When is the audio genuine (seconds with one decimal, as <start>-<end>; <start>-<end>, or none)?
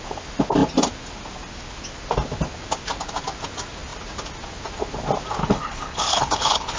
0.0-5.4